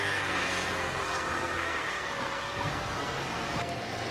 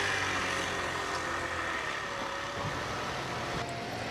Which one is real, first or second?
second